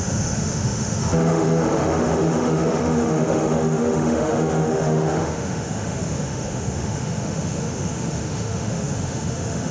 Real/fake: fake